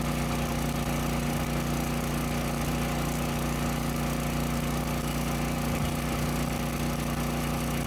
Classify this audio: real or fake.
real